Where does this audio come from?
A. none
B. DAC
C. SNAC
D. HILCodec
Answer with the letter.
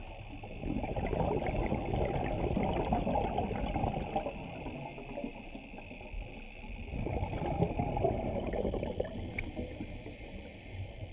A